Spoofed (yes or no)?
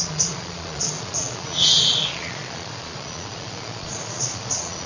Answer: yes